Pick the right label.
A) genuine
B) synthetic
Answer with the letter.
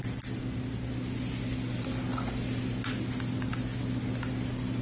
A